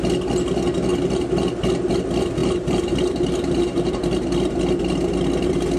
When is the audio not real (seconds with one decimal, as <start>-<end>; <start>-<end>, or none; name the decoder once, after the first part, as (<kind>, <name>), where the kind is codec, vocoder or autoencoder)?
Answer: 2.4-3.9 (vocoder, BigVGAN v2)